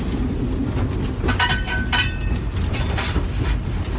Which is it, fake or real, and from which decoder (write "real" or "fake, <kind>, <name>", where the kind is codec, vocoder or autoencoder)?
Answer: real